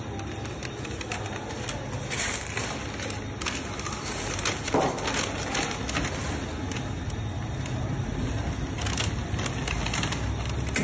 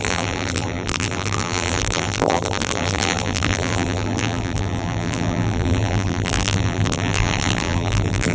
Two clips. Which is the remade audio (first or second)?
second